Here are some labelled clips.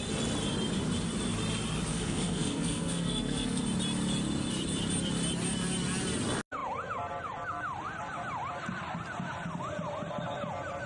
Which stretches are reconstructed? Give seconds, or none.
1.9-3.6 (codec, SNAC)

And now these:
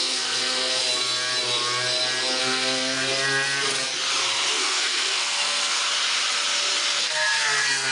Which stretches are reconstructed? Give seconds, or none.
0.0-0.8 (codec, SNAC); 2.4-3.1; 4.5-5.8; 7.0-7.9